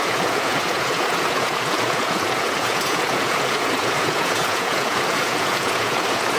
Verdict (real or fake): fake